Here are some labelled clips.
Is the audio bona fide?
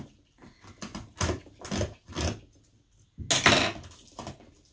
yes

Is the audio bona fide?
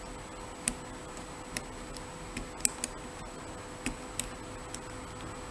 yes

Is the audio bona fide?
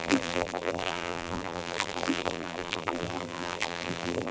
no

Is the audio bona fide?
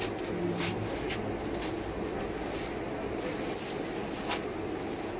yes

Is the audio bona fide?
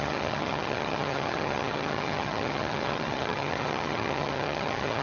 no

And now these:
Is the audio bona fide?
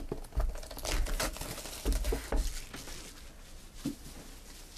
yes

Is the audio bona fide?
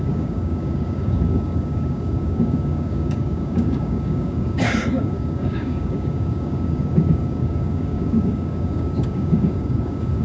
no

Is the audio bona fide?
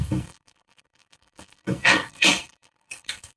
no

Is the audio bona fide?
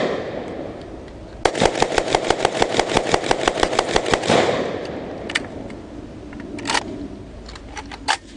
yes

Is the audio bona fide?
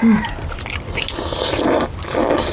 yes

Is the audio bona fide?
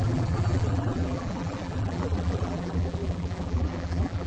no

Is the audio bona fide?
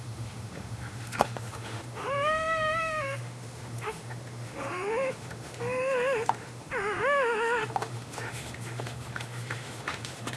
no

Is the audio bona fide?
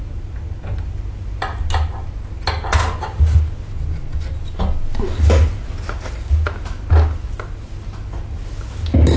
yes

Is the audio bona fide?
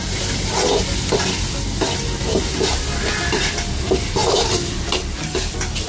yes